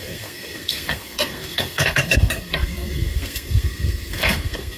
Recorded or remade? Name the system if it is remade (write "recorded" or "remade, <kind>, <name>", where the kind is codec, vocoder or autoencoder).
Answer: remade, codec, SNAC